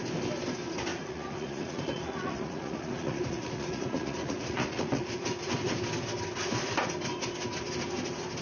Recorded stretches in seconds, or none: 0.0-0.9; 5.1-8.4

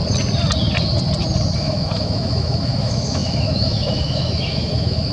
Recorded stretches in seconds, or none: 0.0-1.6

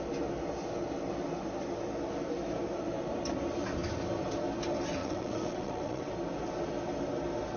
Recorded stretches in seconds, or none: 0.0-5.0; 6.1-7.6

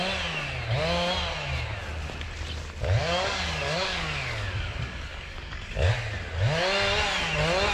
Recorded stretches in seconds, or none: 0.0-3.0; 5.9-7.7

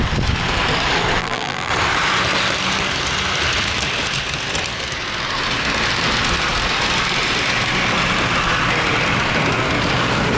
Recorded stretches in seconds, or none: 0.0-1.2; 1.7-10.4

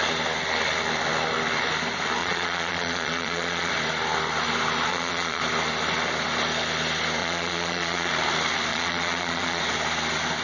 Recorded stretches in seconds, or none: 0.0-2.2; 3.7-4.9; 5.4-7.2; 8.1-8.7; 9.6-10.4

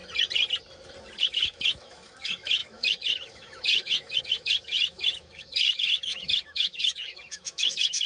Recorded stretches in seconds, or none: 0.0-1.2

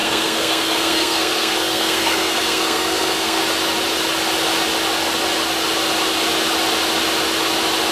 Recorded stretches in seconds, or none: 3.4-7.9